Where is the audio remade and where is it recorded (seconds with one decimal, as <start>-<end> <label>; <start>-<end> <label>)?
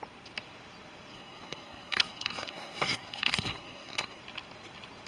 0.0-1.1 recorded; 1.1-4.2 remade; 4.2-5.1 recorded